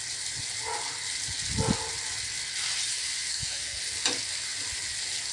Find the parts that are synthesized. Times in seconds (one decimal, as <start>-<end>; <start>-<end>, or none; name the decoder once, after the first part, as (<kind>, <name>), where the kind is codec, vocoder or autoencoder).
3.3-3.8 (codec, SNAC)